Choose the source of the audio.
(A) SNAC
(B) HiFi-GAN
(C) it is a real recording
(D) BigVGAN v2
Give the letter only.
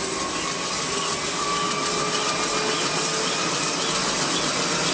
C